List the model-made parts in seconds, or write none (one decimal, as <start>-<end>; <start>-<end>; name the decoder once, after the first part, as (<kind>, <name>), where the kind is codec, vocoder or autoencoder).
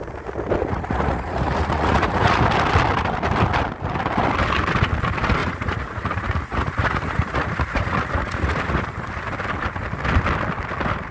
0.6-2.4 (vocoder, Vocos); 5.4-8.8